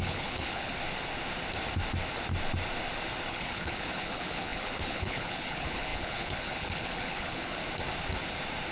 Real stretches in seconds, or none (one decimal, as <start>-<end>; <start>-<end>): 0.7-3.3; 7.6-8.7